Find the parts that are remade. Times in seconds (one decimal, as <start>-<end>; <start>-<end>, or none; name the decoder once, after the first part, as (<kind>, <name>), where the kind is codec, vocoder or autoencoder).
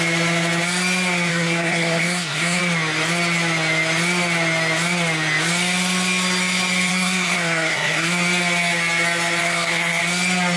1.3-2.6 (codec, SNAC); 6.9-8.1; 9.4-10.0